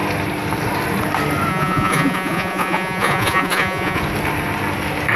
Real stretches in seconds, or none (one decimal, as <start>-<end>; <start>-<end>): 0.0-1.5; 4.0-5.2